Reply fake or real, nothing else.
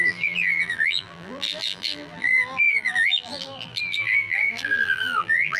fake